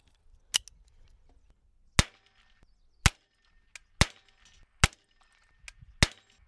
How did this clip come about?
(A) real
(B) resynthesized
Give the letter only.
A